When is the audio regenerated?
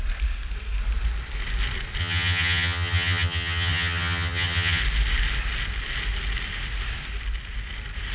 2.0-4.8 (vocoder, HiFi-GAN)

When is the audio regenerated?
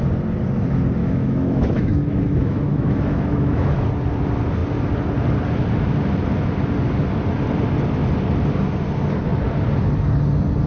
1.0-3.9 (autoencoder, DAC-VAE)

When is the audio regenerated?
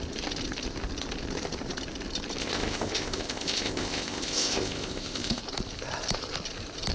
2.4-5.4 (codec, ZipCodec)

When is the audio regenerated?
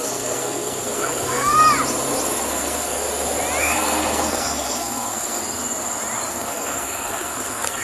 0.0-1.6 (codec, SNAC); 2.5-3.0; 3.6-5.4; 6.3-7.8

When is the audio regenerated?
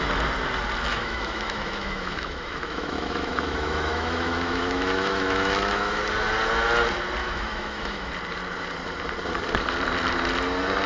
0.9-6.0 (autoencoder, DAC-VAE); 7.2-8.1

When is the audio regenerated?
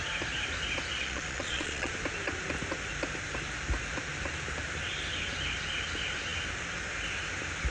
1.0-1.9 (vocoder, Vocos)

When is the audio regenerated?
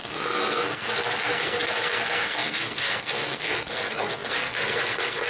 0.0-5.3 (codec, SNAC)